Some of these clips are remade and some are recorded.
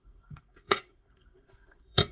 remade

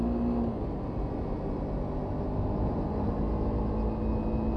recorded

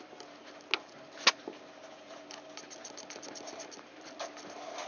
recorded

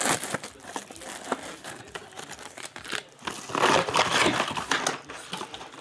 recorded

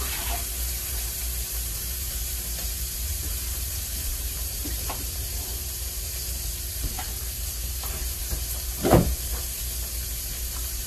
remade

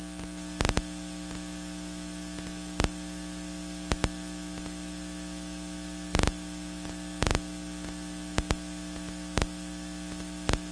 recorded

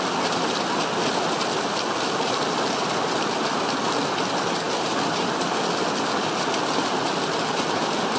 recorded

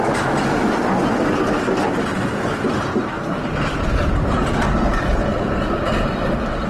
recorded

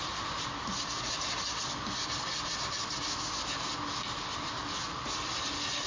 recorded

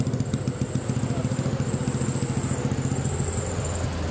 recorded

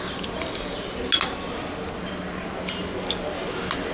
recorded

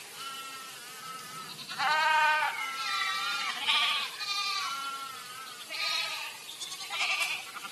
recorded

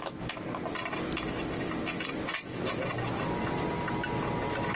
recorded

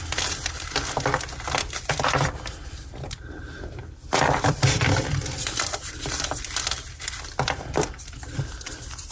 remade